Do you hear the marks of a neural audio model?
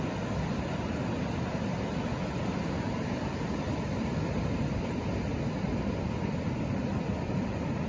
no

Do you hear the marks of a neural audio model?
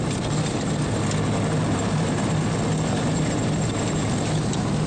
no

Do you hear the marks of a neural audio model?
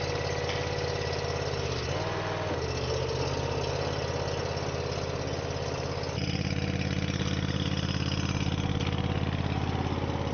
no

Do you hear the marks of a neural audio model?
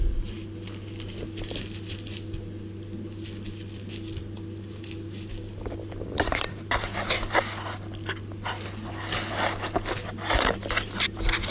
no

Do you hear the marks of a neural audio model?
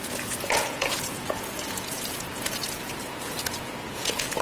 yes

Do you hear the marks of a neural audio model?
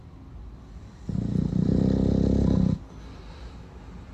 no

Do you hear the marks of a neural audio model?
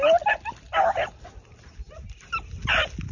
no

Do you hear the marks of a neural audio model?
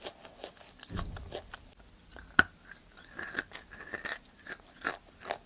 no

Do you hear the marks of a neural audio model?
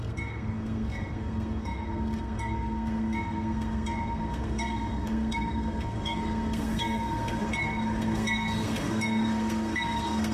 yes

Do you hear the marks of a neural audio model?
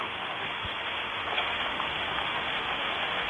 yes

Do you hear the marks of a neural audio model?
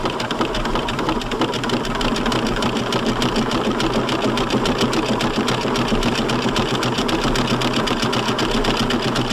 yes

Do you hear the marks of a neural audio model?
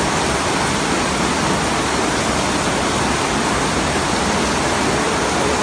no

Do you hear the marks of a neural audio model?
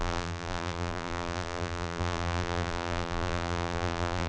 yes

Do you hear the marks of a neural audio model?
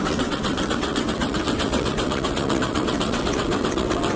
yes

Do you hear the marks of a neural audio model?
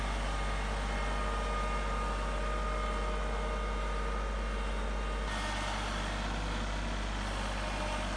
no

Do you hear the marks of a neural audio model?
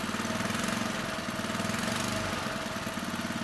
no